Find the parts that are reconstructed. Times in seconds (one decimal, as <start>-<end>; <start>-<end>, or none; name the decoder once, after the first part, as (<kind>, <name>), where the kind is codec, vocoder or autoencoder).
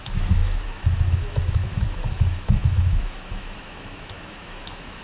0.0-5.0 (autoencoder, DAC-VAE)